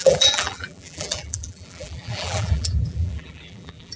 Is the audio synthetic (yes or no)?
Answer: yes